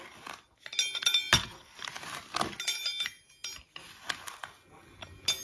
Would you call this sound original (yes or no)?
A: yes